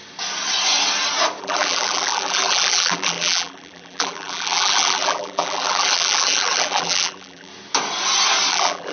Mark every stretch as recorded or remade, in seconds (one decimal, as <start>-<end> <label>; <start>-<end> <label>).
0.0-1.4 recorded; 1.4-7.5 remade; 7.5-8.5 recorded; 8.5-8.9 remade